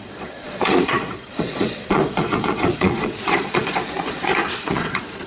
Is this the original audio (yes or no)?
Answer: no